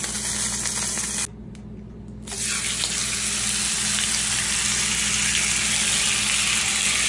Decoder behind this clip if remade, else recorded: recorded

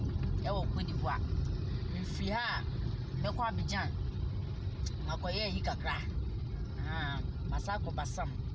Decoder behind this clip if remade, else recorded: recorded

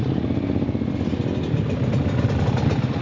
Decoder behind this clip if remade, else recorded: recorded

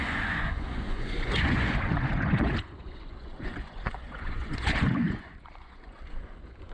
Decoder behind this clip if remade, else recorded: remade, vocoder, Vocos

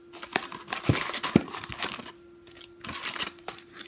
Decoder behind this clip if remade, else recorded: recorded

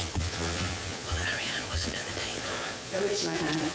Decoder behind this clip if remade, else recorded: remade, vocoder, Vocos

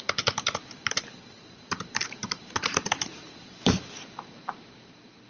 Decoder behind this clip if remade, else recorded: remade, vocoder, BigVGAN v2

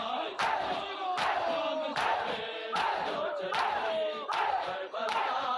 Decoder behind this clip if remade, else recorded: recorded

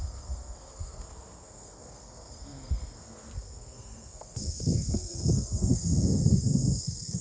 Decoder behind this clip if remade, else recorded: remade, codec, SNAC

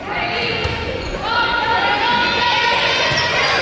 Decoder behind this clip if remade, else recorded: remade, vocoder, Vocos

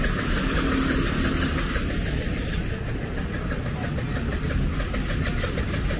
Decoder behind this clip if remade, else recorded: recorded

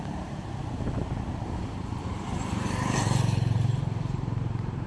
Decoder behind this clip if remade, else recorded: remade, vocoder, BigVGAN v2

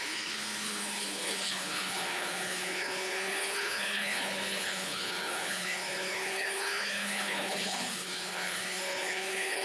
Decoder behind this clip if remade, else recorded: remade, codec, HILCodec